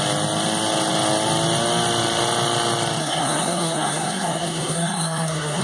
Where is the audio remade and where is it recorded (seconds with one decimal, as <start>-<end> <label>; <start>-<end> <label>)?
0.0-3.0 recorded; 3.0-5.6 remade